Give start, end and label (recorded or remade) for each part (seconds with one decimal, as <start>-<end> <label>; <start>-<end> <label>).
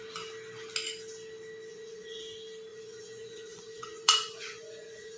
0.0-1.7 recorded; 1.7-2.2 remade; 2.2-2.7 recorded; 2.7-5.2 remade